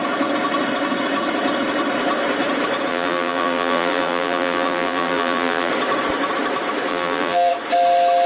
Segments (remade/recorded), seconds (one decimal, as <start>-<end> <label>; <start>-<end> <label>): 0.0-2.9 recorded; 2.9-5.7 remade; 5.7-6.9 recorded; 6.9-7.5 remade; 7.5-8.3 recorded